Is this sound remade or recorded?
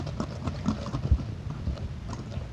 recorded